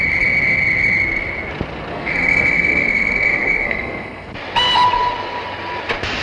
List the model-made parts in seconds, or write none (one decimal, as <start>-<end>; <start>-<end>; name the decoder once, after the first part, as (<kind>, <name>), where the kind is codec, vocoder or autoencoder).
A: 1.9-4.3 (codec, SNAC)